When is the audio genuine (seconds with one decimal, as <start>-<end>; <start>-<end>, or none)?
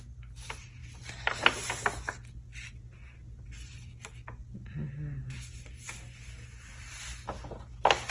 0.0-8.1